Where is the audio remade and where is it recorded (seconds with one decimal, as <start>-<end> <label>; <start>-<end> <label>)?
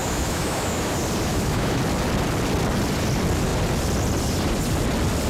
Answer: 0.0-0.9 remade; 0.9-1.3 recorded; 1.3-1.8 remade; 1.8-5.3 recorded